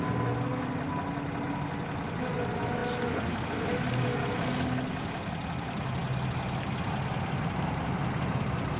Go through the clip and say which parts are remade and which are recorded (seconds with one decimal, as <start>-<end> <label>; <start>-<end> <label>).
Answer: 0.0-8.8 recorded